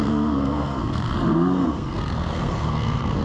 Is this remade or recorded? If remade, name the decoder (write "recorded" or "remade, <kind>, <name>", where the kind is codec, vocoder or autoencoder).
remade, codec, SNAC